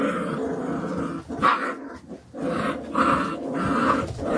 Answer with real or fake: real